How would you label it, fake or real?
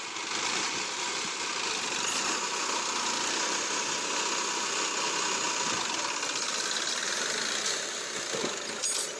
real